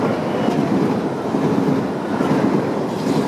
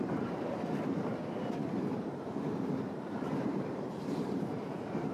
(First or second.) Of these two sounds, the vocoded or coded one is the second